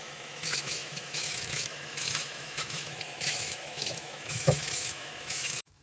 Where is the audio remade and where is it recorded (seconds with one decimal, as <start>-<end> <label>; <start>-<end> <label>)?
0.0-5.8 remade

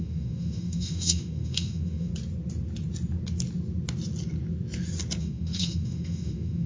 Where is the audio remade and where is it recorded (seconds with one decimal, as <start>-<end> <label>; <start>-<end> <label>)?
0.0-2.1 remade; 2.1-5.2 recorded; 5.2-6.7 remade

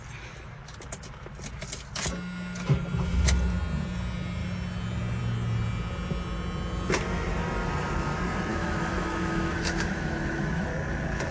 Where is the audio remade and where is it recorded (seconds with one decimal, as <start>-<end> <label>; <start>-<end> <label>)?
0.0-8.5 recorded; 8.5-10.7 remade; 10.7-11.3 recorded

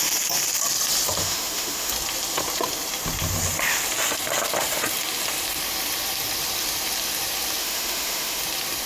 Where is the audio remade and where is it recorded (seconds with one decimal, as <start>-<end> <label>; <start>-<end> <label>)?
0.0-1.2 recorded; 1.2-1.9 remade; 1.9-7.6 recorded; 7.6-8.4 remade; 8.4-8.9 recorded

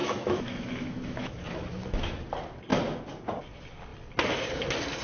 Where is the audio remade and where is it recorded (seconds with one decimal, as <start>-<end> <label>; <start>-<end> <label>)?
0.0-2.2 remade; 2.2-5.0 recorded